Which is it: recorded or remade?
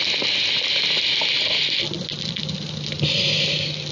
recorded